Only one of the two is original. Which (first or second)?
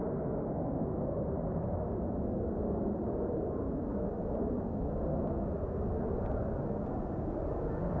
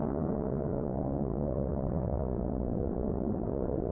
first